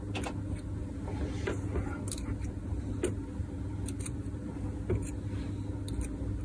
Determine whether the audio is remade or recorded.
recorded